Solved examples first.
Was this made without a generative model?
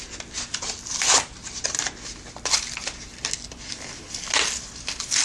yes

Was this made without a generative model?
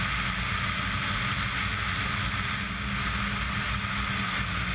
yes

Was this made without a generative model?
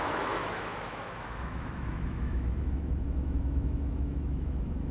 no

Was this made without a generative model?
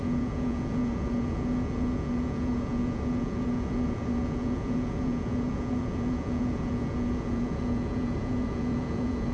no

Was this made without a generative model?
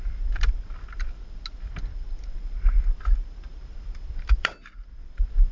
yes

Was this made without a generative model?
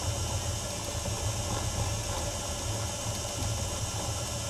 yes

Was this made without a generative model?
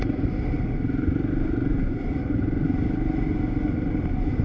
yes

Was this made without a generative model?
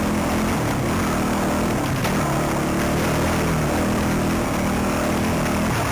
yes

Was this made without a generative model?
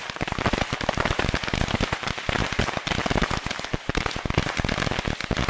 yes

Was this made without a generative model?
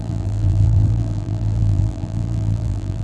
no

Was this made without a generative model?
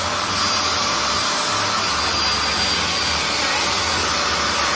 yes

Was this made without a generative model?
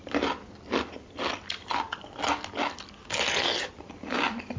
yes